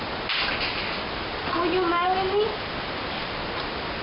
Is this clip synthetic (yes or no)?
no